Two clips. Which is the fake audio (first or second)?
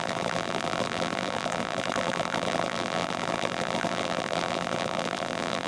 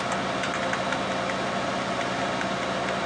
first